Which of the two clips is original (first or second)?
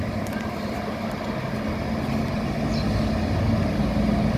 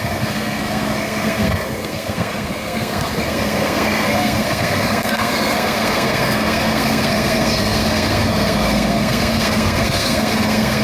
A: first